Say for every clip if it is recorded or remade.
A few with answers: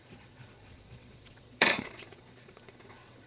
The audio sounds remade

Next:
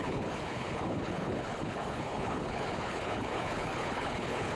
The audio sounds remade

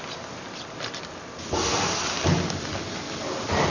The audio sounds recorded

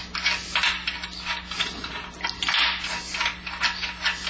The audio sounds recorded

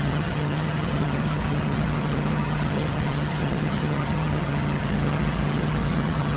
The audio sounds remade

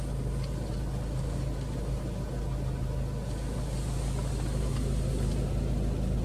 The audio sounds recorded